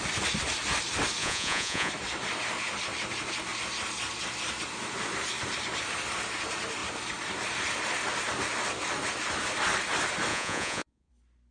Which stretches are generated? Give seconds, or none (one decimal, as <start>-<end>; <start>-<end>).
1.2-1.9; 10.3-11.1